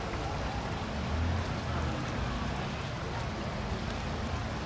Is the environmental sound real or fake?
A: real